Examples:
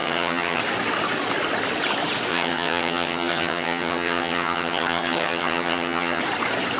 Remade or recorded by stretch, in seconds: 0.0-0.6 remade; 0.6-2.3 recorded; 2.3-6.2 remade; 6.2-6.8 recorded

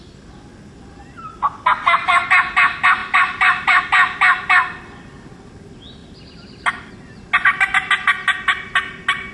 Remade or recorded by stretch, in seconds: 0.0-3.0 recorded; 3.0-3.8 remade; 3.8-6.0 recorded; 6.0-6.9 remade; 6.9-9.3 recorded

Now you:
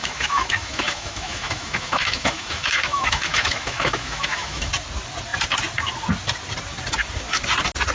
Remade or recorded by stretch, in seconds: 0.0-4.7 remade; 4.7-7.9 recorded

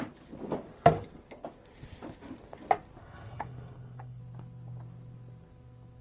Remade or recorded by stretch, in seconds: 0.0-3.0 recorded; 3.0-4.2 remade; 4.2-6.0 recorded